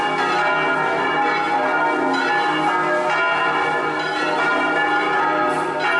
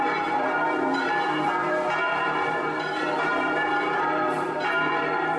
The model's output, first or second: second